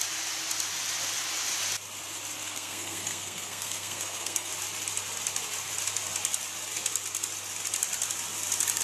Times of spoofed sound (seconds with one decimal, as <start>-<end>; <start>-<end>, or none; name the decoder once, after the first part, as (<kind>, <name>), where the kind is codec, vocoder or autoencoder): 2.4-4.5 (codec, SNAC)